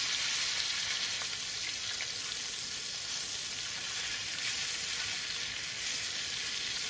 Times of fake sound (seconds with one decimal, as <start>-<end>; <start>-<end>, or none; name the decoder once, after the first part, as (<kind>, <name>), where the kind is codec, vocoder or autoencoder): 4.2-4.8 (vocoder, BigVGAN v2)